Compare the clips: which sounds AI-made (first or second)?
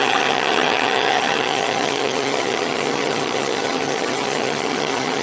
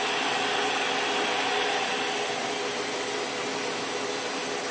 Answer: first